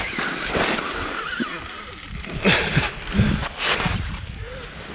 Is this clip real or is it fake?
real